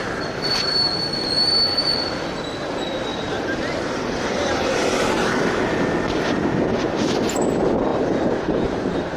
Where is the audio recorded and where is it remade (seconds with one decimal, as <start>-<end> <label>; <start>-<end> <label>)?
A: 0.0-3.1 recorded; 3.1-5.6 remade; 5.6-7.9 recorded; 7.9-9.2 remade